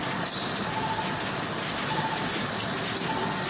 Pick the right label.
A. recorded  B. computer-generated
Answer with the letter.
A